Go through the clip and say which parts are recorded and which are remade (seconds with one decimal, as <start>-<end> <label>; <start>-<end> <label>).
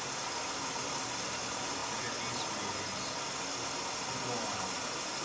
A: 0.0-5.2 recorded